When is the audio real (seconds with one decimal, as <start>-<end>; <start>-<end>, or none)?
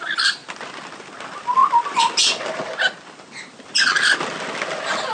0.0-5.1